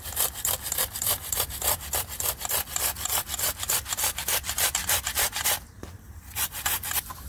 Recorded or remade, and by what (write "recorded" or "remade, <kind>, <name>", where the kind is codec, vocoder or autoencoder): remade, vocoder, BigVGAN v2